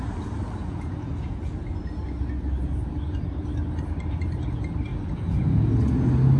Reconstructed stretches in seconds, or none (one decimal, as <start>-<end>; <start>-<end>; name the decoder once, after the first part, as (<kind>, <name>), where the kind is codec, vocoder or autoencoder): 0.6-1.7 (vocoder, Vocos); 4.9-5.8